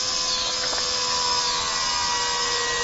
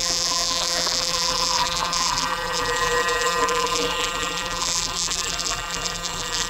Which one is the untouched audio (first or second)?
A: first